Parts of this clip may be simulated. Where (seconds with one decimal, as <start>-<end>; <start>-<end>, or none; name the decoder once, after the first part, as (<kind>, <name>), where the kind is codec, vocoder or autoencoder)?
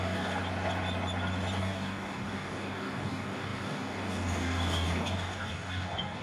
0.0-0.4 (codec, DAC); 1.6-6.2